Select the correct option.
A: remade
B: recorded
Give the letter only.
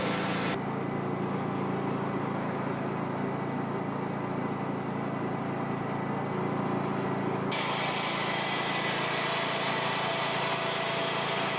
B